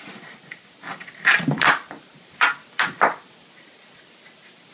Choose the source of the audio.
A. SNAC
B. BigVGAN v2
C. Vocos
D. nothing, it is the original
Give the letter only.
D